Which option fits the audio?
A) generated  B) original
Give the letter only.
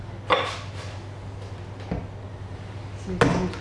B